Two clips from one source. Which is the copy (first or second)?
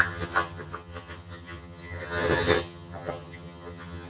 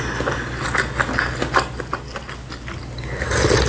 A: first